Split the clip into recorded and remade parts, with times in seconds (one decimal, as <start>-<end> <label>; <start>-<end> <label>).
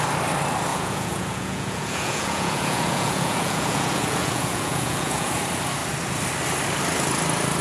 0.0-0.7 recorded; 0.7-5.3 remade; 5.3-7.6 recorded